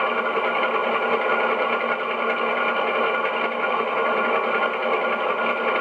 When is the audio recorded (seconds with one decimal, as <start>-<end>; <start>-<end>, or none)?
0.0-5.8